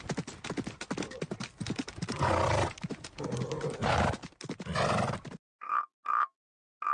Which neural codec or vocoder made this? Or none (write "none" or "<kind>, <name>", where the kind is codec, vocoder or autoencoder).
none